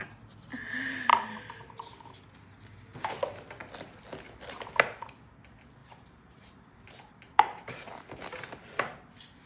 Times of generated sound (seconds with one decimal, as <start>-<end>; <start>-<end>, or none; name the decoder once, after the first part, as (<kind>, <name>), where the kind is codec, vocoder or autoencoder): 5.8-8.0 (vocoder, BigVGAN v2)